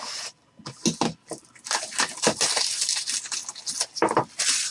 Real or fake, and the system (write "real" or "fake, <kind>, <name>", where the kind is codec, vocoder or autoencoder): real